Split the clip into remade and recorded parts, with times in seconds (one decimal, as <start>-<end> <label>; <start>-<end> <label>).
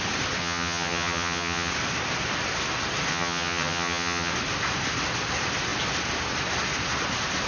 0.0-0.4 recorded; 0.4-1.7 remade; 1.7-3.1 recorded; 3.1-4.3 remade; 4.3-7.5 recorded